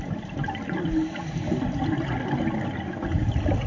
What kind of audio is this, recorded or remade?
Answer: recorded